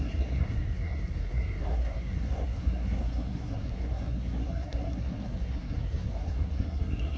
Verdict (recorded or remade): remade